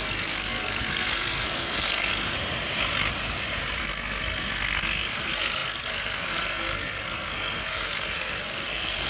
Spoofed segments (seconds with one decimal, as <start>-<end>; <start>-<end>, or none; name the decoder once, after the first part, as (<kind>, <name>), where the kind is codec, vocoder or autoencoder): 0.0-2.1 (codec, SNAC); 3.8-9.1

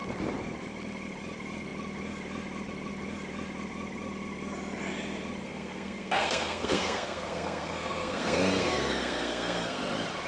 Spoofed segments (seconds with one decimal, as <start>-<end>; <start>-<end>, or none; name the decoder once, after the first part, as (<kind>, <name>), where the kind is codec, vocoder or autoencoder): 5.4-9.8 (codec, SNAC)

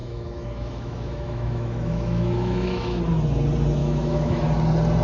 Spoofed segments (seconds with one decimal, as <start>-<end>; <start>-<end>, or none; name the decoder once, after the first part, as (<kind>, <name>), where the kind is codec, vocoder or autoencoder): 0.0-3.0 (autoencoder, DAC-VAE); 3.8-4.4